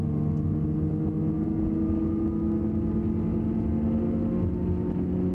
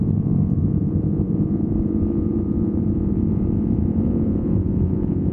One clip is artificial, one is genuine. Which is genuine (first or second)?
first